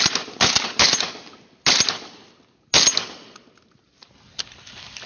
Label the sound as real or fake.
real